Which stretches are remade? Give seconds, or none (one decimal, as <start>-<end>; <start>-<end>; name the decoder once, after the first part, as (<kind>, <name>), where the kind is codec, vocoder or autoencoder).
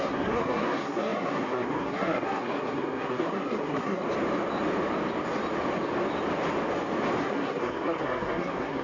0.0-4.0 (codec, SNAC); 7.2-8.8